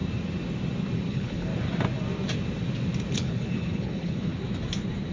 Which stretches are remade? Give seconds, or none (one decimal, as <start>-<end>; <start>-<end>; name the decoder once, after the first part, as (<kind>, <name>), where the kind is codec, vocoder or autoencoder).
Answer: 1.1-1.5 (codec, HILCodec); 3.1-4.3